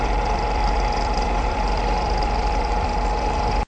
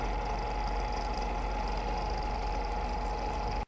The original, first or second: second